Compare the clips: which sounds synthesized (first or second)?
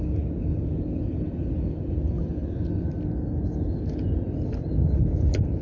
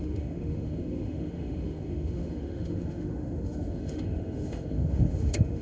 second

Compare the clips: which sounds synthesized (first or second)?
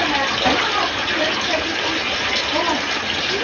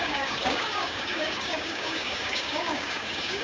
second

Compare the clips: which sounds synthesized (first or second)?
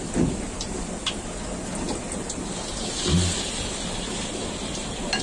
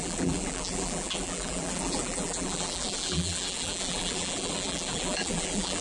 second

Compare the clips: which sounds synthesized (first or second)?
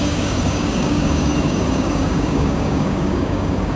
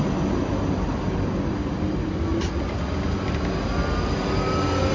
first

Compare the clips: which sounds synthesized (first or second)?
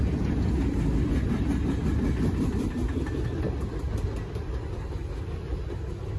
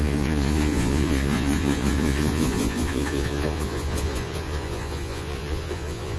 second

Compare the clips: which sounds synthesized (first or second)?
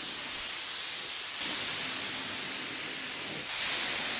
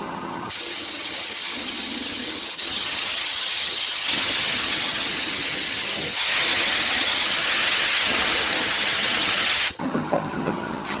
second